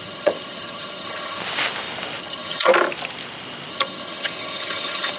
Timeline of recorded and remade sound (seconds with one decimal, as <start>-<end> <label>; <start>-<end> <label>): 0.0-1.4 remade; 1.4-2.2 recorded; 2.2-2.7 remade; 2.7-3.7 recorded; 3.7-5.2 remade